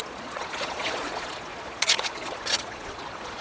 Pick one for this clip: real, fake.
fake